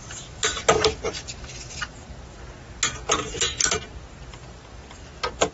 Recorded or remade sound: recorded